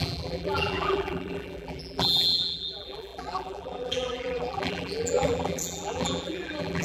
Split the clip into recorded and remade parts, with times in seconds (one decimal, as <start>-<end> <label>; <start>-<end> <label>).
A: 0.0-6.8 remade